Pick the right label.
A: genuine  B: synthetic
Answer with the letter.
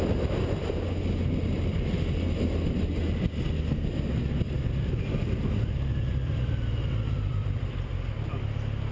A